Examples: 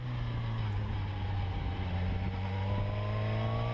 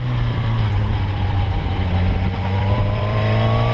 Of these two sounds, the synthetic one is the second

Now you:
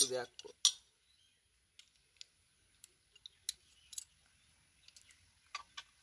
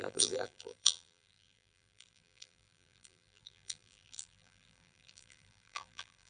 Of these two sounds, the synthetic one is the second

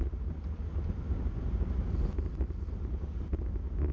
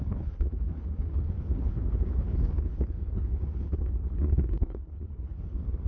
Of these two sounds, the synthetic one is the second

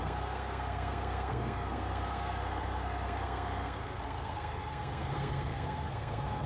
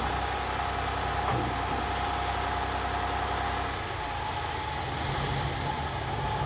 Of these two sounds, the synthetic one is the first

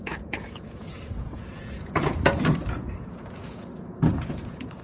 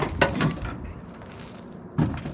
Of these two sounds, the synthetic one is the first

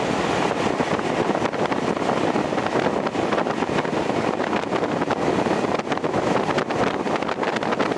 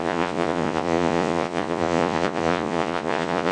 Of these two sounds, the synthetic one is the second